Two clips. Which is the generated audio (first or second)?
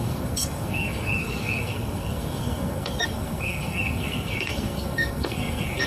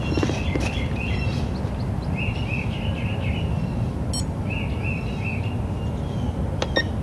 first